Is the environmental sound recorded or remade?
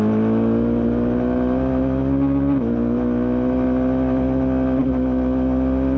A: recorded